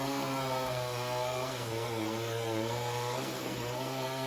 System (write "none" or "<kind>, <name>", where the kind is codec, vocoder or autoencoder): codec, SNAC